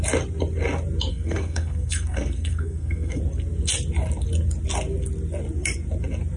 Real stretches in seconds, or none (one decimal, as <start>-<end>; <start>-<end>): 0.0-1.1; 3.2-6.4